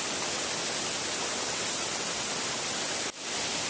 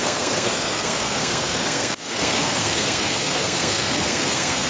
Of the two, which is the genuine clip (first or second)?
first